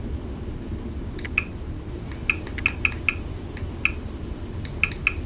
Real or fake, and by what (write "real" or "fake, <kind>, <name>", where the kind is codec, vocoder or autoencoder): real